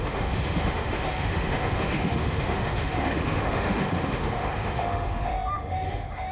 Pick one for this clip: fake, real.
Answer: fake